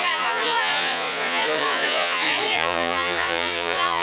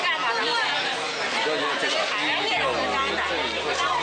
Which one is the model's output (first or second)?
first